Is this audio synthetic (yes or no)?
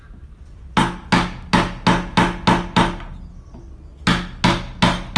no